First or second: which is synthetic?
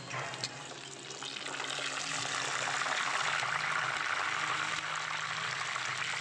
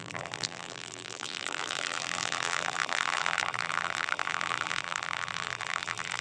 second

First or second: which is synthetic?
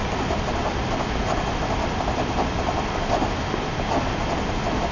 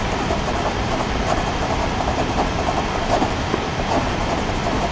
second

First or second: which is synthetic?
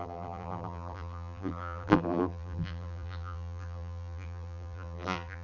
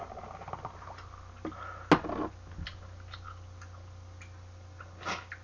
first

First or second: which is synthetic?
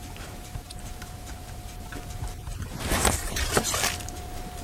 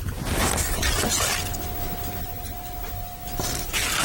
first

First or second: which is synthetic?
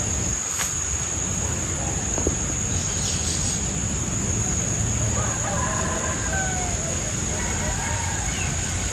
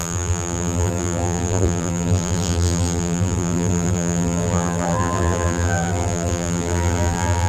second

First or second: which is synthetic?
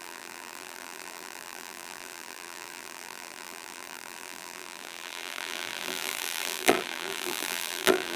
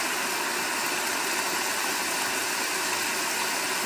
first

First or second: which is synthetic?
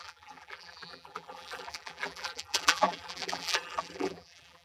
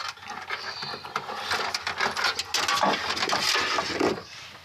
first